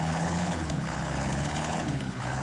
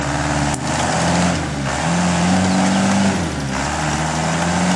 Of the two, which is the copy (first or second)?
first